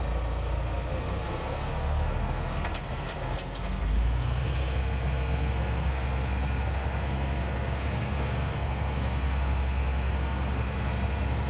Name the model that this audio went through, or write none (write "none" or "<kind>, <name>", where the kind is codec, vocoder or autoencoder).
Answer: codec, SNAC